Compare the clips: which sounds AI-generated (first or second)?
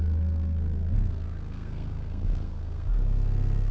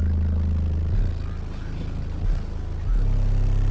first